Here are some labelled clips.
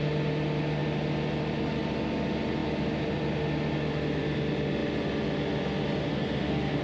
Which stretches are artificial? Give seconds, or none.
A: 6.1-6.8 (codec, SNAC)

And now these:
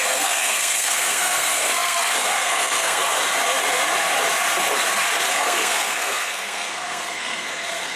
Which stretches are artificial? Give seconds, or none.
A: 0.0-3.0 (codec, SNAC); 5.3-8.0

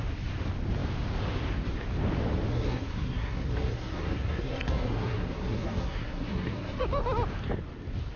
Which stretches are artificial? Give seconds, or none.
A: 2.5-6.8 (codec, SNAC)

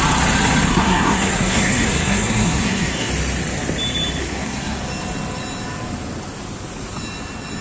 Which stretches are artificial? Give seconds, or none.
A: 0.7-3.1 (codec, SNAC); 4.2-4.8